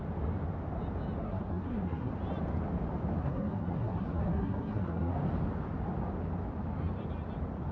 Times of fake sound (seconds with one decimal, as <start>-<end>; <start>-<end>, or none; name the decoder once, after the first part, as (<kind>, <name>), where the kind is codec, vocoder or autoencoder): 1.2-2.1 (codec, SNAC); 3.2-5.1